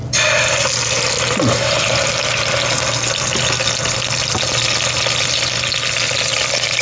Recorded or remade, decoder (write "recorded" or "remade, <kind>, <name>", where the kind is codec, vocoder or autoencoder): recorded